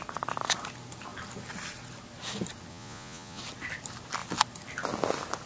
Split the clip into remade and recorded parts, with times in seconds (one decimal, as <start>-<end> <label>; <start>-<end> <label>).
0.0-2.7 recorded; 2.7-3.4 remade; 3.4-5.5 recorded